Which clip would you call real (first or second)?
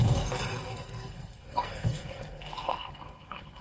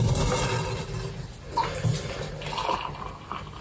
second